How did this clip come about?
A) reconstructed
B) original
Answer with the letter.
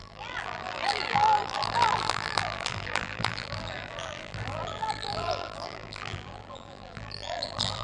A